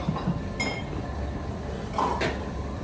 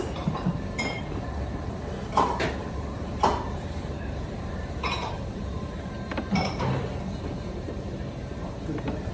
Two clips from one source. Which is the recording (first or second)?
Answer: first